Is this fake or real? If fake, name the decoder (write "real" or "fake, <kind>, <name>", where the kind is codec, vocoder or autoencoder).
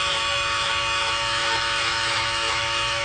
fake, autoencoder, DAC-VAE